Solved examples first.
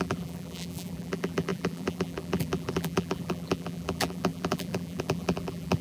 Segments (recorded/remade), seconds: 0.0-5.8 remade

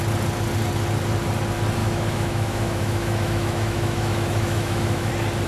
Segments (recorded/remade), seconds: 0.0-1.8 recorded; 1.8-5.1 remade; 5.1-5.5 recorded

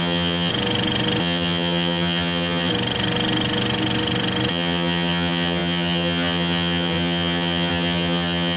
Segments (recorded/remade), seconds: 0.0-0.5 remade; 0.5-1.2 recorded; 1.2-2.7 remade; 2.7-4.5 recorded; 4.5-8.6 remade

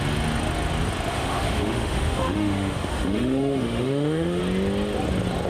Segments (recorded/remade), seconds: 0.0-1.1 recorded; 1.1-4.4 remade; 4.4-5.5 recorded